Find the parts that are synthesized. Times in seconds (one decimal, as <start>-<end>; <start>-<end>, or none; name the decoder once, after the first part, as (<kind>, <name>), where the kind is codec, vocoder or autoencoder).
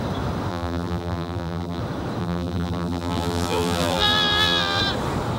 0.5-1.8 (vocoder, BigVGAN v2); 2.2-4.8